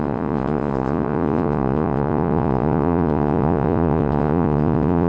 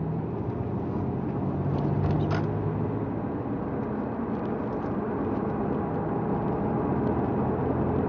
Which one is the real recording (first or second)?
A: second